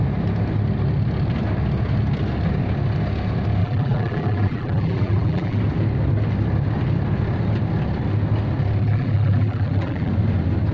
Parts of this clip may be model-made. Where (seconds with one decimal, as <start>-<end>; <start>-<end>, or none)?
3.6-5.6; 8.8-10.1